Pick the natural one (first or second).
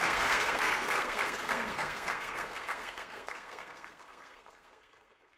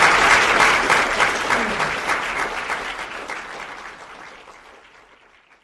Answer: second